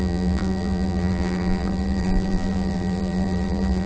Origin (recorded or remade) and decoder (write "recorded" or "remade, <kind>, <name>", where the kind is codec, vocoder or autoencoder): remade, vocoder, BigVGAN v2